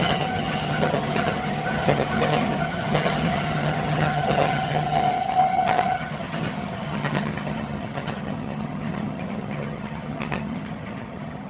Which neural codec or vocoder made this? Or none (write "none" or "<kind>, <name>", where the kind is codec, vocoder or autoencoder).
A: vocoder, HiFi-GAN